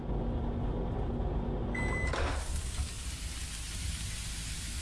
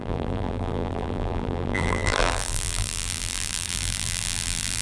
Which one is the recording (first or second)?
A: first